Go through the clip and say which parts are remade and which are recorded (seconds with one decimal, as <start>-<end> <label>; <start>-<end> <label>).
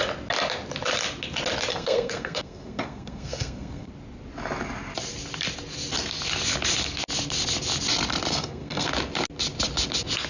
0.0-1.7 recorded; 1.7-3.9 remade; 3.9-8.3 recorded; 8.3-8.9 remade; 8.9-10.3 recorded